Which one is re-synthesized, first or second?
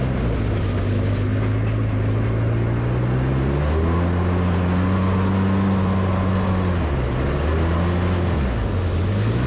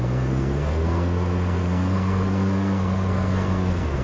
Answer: second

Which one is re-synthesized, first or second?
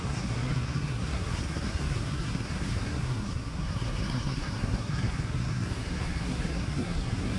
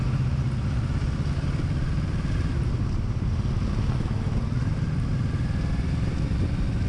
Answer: first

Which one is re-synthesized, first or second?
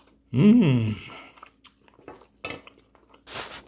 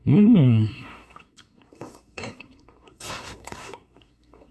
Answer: second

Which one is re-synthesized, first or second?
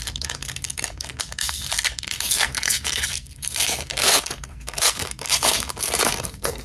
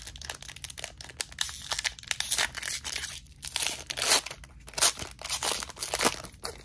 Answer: first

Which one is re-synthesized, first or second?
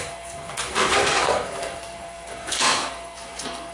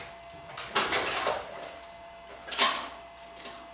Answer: first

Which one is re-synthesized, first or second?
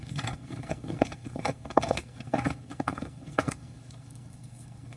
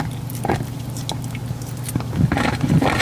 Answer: first